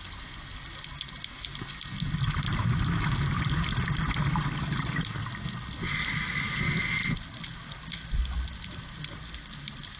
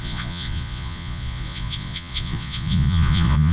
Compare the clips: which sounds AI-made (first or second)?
second